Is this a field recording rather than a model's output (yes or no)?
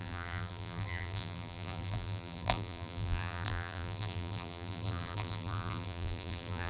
no